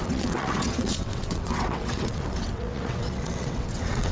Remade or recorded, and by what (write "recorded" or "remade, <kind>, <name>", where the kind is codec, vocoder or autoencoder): remade, vocoder, WaveNeXt